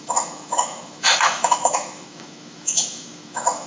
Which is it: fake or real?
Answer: fake